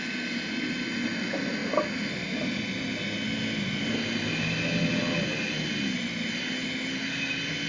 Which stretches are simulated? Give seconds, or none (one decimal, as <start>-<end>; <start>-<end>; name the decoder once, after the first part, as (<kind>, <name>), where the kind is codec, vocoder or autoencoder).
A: none